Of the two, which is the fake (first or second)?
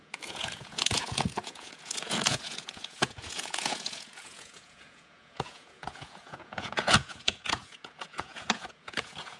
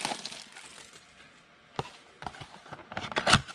first